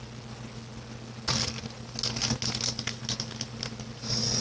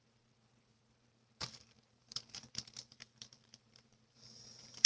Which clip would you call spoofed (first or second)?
second